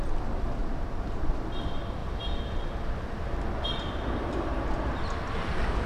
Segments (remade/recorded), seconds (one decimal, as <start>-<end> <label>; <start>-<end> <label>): 0.0-0.6 recorded; 0.6-1.5 remade; 1.5-5.9 recorded